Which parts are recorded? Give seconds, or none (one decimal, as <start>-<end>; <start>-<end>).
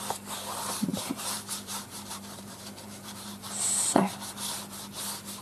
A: 0.0-0.9; 4.1-5.4